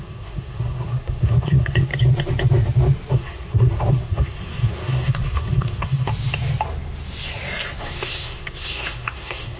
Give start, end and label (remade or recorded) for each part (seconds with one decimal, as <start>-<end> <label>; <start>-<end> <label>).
0.0-1.9 remade; 1.9-3.1 recorded; 3.1-6.1 remade; 6.1-7.8 recorded; 7.8-9.6 remade